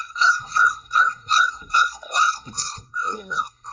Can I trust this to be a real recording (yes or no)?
no